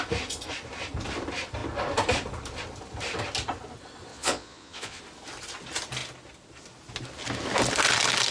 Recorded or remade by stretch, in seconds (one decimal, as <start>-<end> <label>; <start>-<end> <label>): 0.0-4.1 recorded; 4.1-5.0 remade; 5.0-8.3 recorded